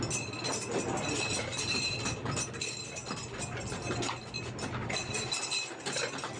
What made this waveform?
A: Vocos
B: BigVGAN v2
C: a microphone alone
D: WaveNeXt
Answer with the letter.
C